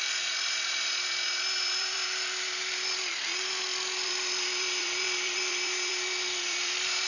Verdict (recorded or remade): remade